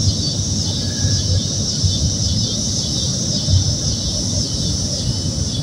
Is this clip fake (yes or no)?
no